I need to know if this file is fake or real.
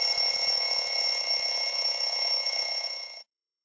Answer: fake